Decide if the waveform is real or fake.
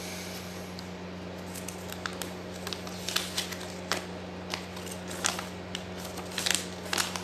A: real